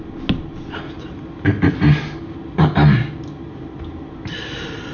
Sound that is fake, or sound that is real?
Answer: real